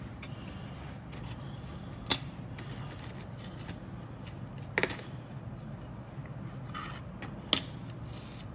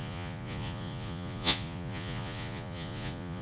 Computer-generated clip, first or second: second